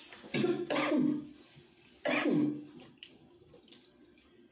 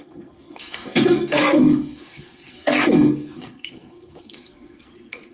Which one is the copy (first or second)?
second